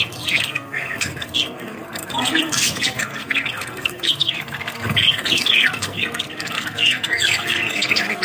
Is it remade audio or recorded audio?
remade